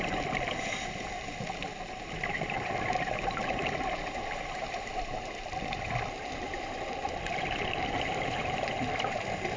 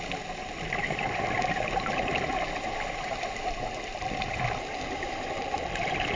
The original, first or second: second